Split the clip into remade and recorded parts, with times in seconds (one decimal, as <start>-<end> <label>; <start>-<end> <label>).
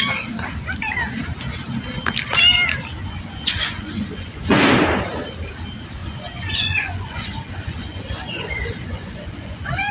0.0-3.0 recorded; 3.0-4.6 remade; 4.6-6.0 recorded; 6.0-9.9 remade